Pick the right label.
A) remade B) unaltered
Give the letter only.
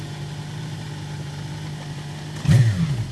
B